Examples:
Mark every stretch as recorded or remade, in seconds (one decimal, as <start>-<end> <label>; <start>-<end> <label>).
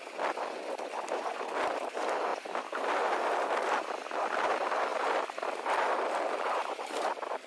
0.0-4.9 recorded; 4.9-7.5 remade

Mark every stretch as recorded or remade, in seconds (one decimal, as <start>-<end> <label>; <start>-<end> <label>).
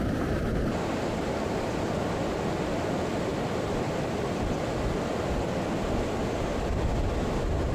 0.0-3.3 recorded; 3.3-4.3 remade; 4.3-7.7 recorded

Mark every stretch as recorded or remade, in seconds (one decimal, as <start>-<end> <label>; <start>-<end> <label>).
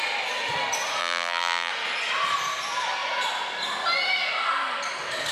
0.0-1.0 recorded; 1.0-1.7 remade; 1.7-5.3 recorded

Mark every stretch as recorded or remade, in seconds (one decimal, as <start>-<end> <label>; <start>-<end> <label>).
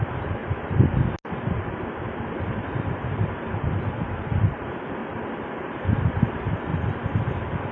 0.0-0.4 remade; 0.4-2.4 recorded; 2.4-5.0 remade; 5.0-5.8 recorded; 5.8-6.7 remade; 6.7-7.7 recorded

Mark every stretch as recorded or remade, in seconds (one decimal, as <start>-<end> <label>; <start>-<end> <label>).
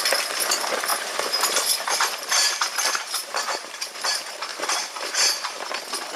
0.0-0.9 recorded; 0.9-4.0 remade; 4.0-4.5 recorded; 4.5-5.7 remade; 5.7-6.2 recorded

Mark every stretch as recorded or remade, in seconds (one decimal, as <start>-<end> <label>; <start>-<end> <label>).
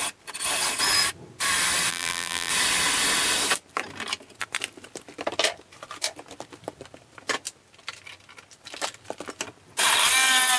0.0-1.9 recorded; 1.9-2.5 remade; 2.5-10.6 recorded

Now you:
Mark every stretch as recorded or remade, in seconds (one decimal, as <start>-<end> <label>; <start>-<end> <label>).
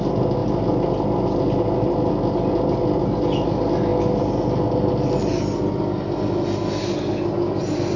0.0-8.0 recorded